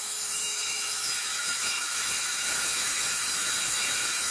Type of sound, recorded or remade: remade